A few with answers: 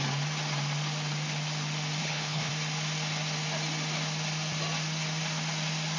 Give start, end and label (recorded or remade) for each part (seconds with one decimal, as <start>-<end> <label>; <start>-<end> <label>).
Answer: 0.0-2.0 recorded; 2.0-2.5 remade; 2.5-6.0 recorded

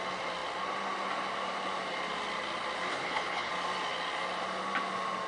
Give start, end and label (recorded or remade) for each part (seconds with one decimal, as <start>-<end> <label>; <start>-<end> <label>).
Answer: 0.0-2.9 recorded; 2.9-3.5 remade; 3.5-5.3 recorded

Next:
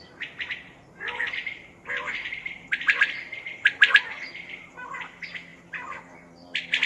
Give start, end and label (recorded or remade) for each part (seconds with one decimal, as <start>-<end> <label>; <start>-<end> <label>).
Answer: 0.0-6.9 recorded

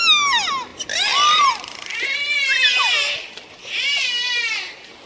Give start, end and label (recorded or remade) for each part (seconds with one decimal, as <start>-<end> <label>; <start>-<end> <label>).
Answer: 0.0-5.1 recorded

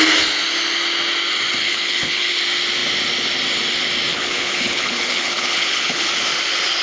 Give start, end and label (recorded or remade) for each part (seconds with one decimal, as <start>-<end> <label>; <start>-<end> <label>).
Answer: 0.0-1.6 recorded; 1.6-2.4 remade; 2.4-4.1 recorded; 4.1-6.1 remade; 6.1-6.8 recorded

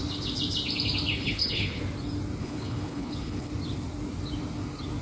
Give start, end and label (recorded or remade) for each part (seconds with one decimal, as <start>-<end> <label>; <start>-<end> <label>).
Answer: 0.0-1.1 recorded; 1.1-1.8 remade; 1.8-2.4 recorded; 2.4-3.5 remade; 3.5-5.0 recorded